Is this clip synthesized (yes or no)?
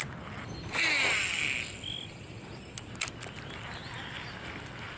no